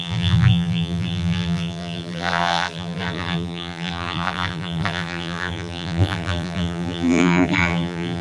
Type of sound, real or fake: fake